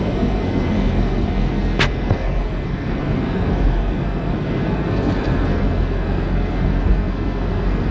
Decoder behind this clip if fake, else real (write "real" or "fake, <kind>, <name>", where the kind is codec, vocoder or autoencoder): fake, codec, SNAC